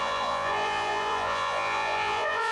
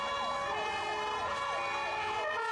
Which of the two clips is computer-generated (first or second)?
first